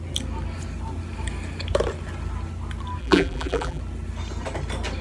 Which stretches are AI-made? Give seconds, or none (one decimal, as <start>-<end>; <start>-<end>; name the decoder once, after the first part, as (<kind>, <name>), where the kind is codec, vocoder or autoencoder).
3.0-3.8 (vocoder, BigVGAN v2)

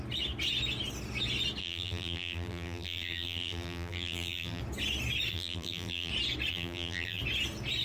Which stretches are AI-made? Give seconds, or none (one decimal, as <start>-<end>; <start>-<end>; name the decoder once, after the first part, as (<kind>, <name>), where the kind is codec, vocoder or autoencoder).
1.6-4.6 (vocoder, BigVGAN v2); 5.3-6.1; 6.5-7.2

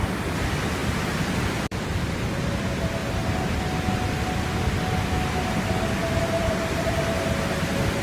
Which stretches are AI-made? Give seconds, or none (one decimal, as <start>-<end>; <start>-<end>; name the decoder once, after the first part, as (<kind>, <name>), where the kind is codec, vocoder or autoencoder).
0.8-2.2 (vocoder, BigVGAN v2); 3.0-4.6; 6.0-6.9

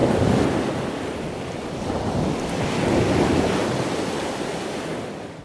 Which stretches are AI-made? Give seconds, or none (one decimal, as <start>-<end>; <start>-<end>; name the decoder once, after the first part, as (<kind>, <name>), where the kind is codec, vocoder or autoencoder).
none

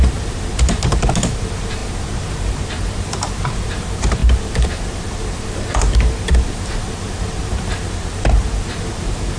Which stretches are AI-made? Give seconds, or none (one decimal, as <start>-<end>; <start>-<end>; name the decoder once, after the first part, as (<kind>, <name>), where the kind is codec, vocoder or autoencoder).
0.0-9.4 (vocoder, BigVGAN v2)

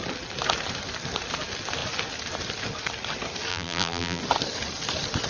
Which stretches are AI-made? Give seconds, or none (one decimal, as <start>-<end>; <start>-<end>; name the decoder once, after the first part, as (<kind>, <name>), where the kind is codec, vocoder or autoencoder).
3.5-4.2 (vocoder, BigVGAN v2)

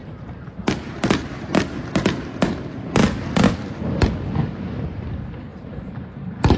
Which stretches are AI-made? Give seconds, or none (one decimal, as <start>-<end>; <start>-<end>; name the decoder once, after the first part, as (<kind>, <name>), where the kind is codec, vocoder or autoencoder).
5.5-6.6 (vocoder, BigVGAN v2)

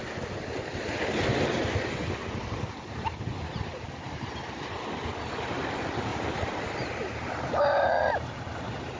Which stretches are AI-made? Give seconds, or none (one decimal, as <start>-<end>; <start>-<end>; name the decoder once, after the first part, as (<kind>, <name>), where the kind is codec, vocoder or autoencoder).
1.3-4.4 (vocoder, BigVGAN v2); 6.1-7.5